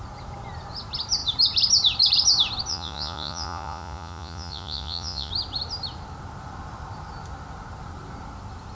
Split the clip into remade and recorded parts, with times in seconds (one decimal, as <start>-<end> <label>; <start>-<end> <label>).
0.0-2.7 recorded; 2.7-5.3 remade; 5.3-8.7 recorded